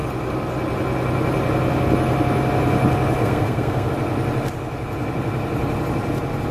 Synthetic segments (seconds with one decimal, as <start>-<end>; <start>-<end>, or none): 3.2-3.9